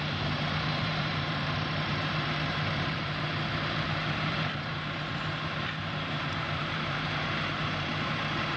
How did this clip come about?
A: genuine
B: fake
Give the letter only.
B